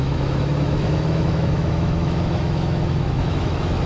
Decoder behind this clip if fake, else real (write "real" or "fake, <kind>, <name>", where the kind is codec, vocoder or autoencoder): fake, autoencoder, DAC-VAE